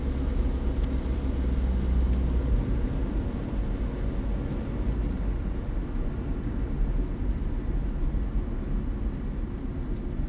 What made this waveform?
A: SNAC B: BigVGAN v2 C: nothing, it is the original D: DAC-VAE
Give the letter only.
C